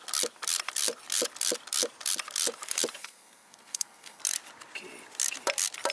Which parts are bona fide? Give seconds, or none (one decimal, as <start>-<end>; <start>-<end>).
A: 0.0-3.0; 4.2-5.9